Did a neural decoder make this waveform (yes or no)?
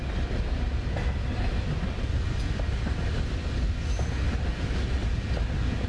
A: no